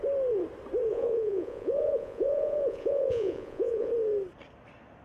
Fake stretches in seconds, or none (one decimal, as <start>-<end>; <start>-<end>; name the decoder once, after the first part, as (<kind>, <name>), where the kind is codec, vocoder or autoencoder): 0.9-3.9 (vocoder, Vocos)